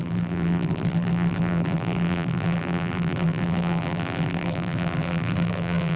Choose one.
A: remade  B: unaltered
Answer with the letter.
A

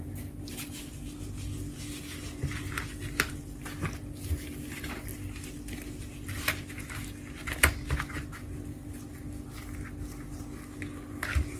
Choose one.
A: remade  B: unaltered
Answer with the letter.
B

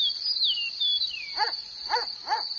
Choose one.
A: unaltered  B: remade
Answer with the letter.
A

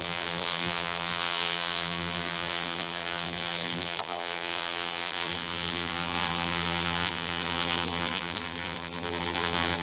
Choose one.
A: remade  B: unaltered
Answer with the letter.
A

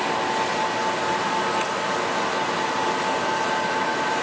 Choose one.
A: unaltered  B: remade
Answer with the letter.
B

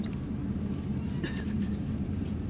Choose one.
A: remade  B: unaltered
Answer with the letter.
A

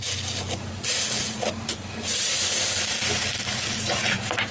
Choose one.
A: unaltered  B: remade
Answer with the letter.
A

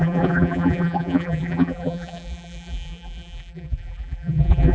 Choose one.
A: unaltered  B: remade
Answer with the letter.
B